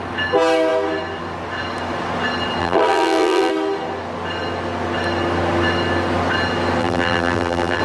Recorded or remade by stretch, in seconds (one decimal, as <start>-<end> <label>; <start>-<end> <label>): 0.0-2.6 recorded; 2.6-3.5 remade; 3.5-6.8 recorded; 6.8-7.8 remade